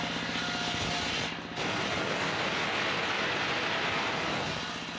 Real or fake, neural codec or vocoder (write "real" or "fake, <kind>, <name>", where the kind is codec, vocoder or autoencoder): real